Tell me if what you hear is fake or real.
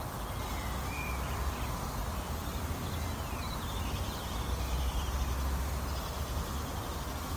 real